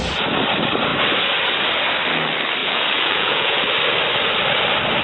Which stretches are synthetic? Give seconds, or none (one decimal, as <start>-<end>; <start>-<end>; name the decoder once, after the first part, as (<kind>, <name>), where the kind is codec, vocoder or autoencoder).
2.6-3.6 (vocoder, Vocos)